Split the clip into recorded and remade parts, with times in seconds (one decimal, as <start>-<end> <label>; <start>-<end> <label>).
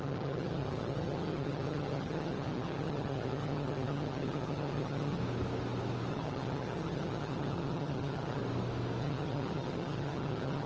0.0-5.2 remade; 5.2-6.1 recorded; 6.1-8.4 remade; 8.4-9.0 recorded; 9.0-10.7 remade